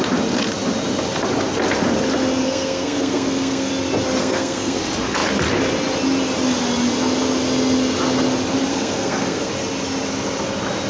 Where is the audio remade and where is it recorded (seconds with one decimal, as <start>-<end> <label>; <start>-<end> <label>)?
0.0-2.4 recorded; 2.4-3.7 remade; 3.7-4.2 recorded; 4.2-4.8 remade; 4.8-8.7 recorded; 8.7-9.5 remade; 9.5-10.9 recorded